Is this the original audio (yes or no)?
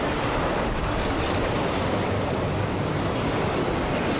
yes